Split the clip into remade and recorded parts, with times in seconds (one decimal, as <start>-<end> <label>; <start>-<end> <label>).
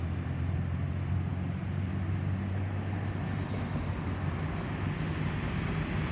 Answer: 0.0-6.1 recorded